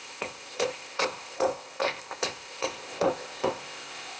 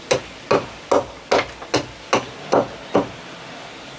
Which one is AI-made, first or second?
first